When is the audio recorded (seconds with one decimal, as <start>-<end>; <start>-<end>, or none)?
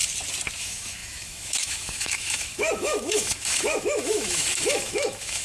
0.0-0.6